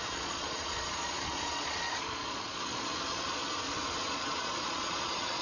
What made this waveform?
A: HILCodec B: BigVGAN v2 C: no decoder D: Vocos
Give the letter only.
D